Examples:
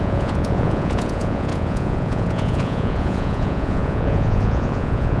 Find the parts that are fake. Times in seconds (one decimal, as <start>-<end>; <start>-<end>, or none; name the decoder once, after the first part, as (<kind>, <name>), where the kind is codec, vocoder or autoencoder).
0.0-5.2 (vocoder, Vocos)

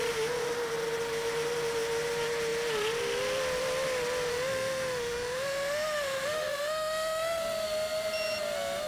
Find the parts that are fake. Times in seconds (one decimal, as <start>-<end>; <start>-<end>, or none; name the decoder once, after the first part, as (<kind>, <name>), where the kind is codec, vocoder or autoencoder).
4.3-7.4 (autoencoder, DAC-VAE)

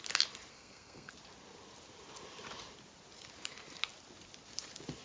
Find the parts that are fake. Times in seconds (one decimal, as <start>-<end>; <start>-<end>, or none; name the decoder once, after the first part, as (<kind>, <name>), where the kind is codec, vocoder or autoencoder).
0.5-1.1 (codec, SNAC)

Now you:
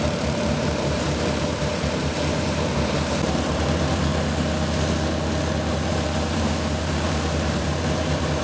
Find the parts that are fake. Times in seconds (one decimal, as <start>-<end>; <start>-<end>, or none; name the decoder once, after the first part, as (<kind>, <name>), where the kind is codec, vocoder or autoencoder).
0.0-4.1 (vocoder, BigVGAN v2); 5.9-8.4